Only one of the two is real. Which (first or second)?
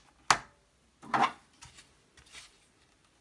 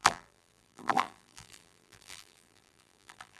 first